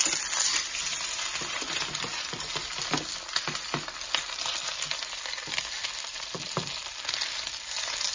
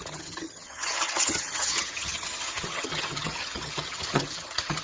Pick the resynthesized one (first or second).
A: second